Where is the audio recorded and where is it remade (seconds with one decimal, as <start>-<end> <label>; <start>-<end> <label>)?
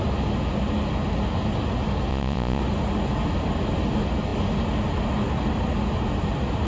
0.0-2.1 recorded; 2.1-2.6 remade; 2.6-6.7 recorded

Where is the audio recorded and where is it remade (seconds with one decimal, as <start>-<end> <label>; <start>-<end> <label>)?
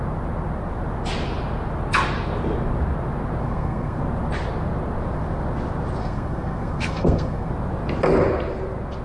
0.0-3.4 recorded; 3.4-4.0 remade; 4.0-6.0 recorded; 6.0-7.5 remade; 7.5-9.0 recorded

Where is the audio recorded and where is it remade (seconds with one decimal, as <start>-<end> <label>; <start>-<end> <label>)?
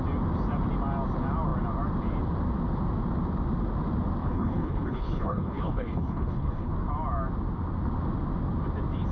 0.0-4.2 recorded; 4.2-6.7 remade; 6.7-9.1 recorded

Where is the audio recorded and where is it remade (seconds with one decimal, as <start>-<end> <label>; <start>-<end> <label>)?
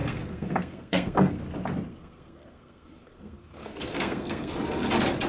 0.0-1.4 remade; 1.4-1.9 recorded; 1.9-4.5 remade; 4.5-5.3 recorded